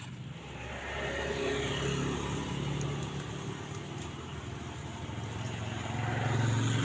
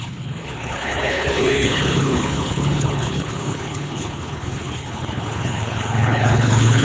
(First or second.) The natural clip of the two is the first